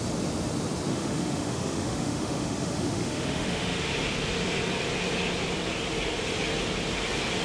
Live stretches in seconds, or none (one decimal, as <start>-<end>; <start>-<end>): 0.0-0.9; 3.9-7.4